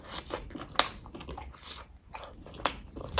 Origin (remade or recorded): recorded